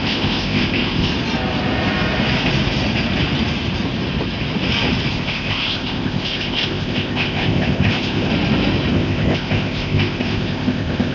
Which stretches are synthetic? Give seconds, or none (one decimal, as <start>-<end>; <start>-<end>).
0.0-1.1; 5.1-8.3; 8.9-11.1